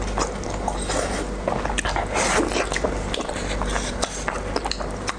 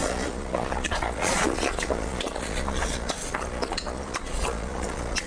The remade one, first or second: second